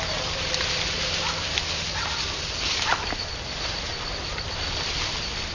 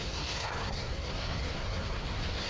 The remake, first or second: second